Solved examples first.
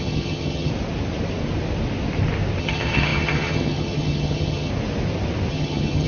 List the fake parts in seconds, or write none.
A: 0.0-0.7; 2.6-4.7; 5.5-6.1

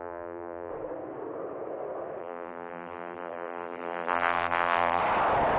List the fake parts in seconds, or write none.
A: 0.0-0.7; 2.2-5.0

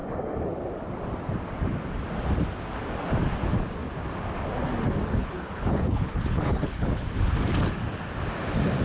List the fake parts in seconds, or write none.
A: 5.2-7.0

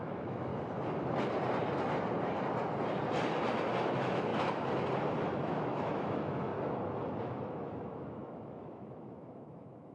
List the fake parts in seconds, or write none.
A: 0.0-0.5; 3.8-4.3; 5.2-6.5; 7.2-9.9

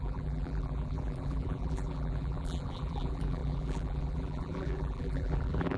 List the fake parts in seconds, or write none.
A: 0.0-5.8

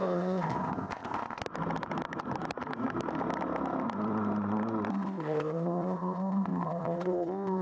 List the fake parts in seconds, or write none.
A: 0.0-1.4; 4.9-7.6